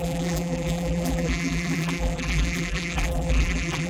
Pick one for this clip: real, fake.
fake